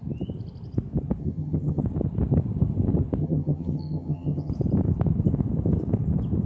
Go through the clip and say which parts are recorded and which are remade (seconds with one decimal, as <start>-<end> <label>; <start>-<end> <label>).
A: 0.0-1.2 recorded; 1.2-1.8 remade; 1.8-3.2 recorded; 3.2-4.5 remade; 4.5-6.5 recorded